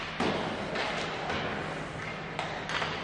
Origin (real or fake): real